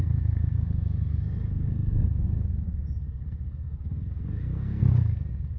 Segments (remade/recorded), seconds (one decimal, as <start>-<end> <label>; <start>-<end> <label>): 0.0-5.6 remade